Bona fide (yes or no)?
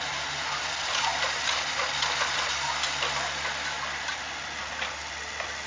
yes